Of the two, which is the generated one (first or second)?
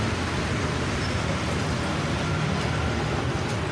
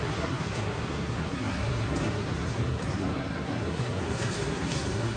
second